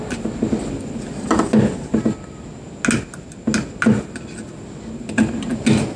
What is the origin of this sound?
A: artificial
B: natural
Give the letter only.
B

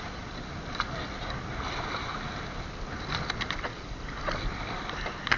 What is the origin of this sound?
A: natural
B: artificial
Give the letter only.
A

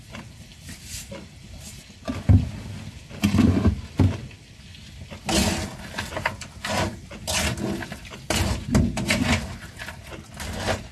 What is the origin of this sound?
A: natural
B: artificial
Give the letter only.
A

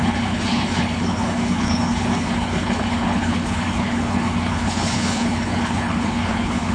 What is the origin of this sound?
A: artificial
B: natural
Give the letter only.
A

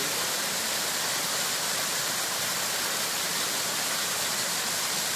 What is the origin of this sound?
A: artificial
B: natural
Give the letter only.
B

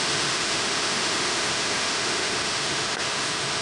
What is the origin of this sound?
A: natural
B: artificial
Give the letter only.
B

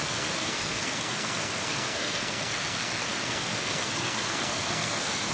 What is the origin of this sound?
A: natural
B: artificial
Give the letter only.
B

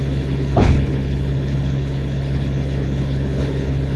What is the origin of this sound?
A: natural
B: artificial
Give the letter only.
B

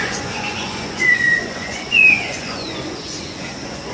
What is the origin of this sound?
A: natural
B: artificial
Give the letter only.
B